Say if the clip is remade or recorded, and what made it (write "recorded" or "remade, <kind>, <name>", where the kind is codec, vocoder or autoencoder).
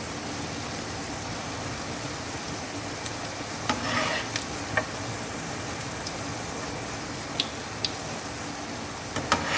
recorded